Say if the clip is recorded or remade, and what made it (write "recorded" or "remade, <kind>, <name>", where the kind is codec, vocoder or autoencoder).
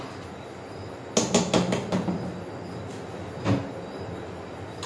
recorded